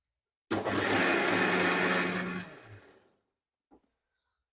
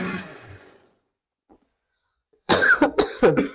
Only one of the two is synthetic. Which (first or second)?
second